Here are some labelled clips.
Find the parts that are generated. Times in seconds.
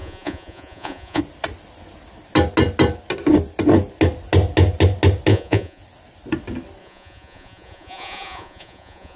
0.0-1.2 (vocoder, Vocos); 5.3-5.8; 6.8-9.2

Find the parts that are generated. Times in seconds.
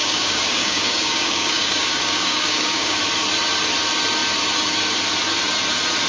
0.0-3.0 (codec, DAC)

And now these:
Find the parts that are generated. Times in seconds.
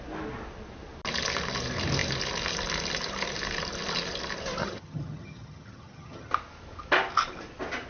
4.6-6.3 (vocoder, HiFi-GAN)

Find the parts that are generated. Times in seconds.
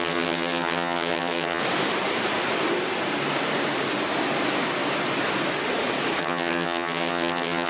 0.0-1.6 (vocoder, HiFi-GAN); 6.2-7.7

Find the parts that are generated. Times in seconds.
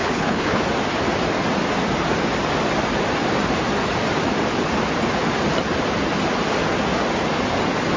0.0-0.6 (codec, HILCodec)